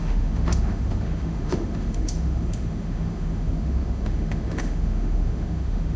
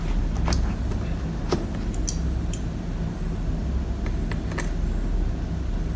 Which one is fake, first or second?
first